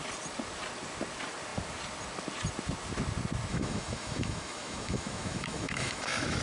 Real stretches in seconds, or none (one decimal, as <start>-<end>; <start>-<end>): 0.0-3.5